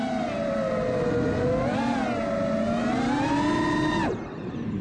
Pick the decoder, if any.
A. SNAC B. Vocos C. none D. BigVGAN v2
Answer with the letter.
C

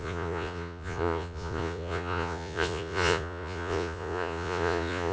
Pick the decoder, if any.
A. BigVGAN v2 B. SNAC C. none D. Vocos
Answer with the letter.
D